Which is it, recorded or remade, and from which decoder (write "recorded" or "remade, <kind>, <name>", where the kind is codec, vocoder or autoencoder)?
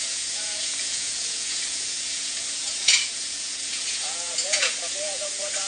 remade, vocoder, Vocos